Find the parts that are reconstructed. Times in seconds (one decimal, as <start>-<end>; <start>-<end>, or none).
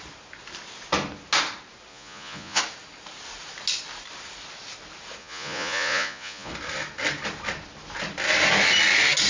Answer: 1.9-2.6; 5.2-6.5